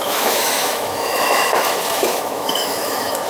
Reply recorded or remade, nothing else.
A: remade